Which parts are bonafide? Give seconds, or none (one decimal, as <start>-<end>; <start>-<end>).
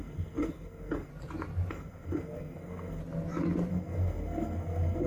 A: 1.1-1.7; 3.0-3.7